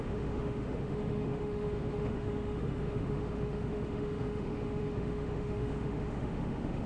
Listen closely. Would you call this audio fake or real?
fake